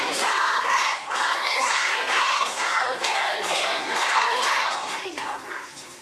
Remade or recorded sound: remade